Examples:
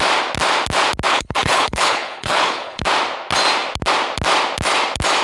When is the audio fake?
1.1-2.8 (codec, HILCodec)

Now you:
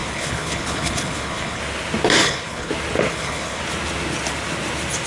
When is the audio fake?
0.0-1.6 (codec, HILCodec); 2.2-2.7; 3.1-3.6

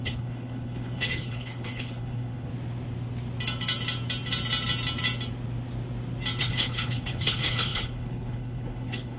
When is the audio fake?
0.0-2.5 (codec, HILCodec); 6.4-9.2